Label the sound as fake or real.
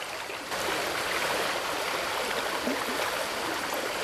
real